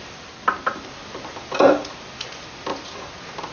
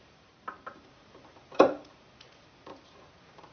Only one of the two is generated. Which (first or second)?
second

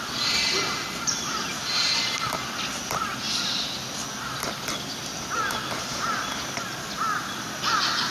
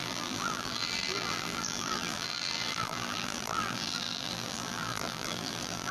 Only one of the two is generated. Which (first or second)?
second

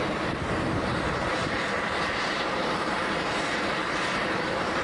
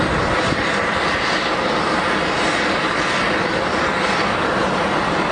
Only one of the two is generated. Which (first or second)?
first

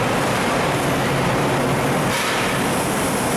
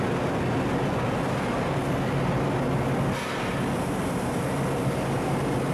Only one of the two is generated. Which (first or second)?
first